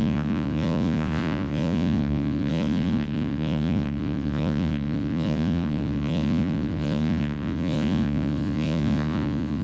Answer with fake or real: fake